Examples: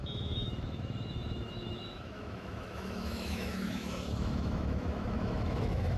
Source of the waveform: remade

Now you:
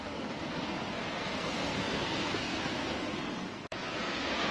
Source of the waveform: remade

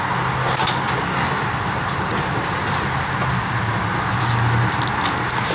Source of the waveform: recorded